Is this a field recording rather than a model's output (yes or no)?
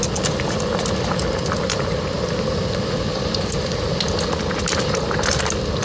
yes